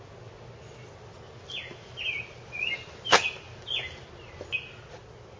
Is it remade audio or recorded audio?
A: recorded